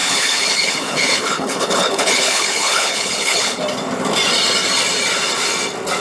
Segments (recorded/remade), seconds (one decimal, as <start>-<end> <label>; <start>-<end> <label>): 0.0-3.6 remade; 3.6-6.0 recorded